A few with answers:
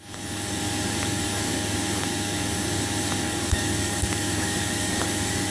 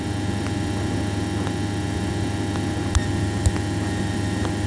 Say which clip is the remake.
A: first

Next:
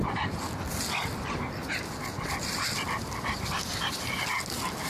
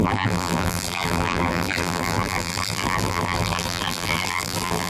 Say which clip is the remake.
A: second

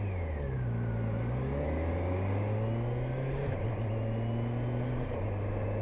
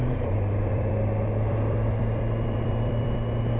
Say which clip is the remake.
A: second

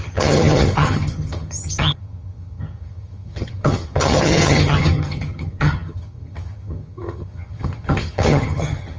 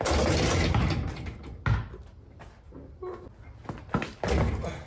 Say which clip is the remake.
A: first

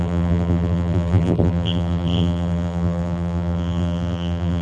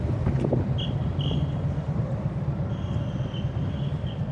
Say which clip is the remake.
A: first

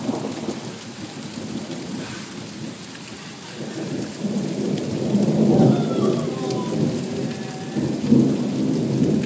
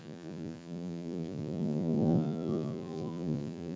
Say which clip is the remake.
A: second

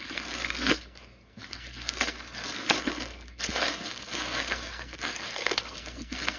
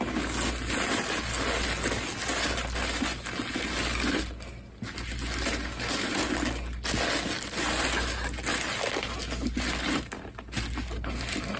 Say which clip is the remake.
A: first